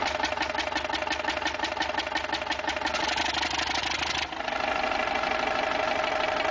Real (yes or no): yes